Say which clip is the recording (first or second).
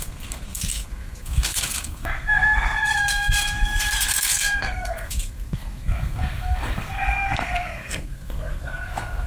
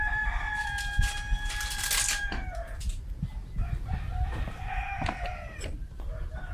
second